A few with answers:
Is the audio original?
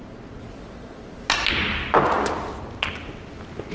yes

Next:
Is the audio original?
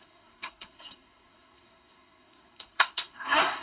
no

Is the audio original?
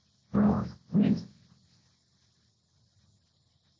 yes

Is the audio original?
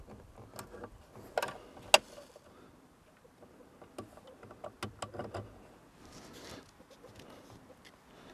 yes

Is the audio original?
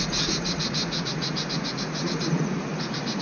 no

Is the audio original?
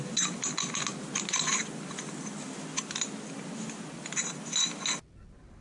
yes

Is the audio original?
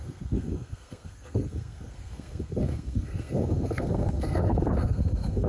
no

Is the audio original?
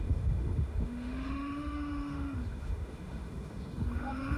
no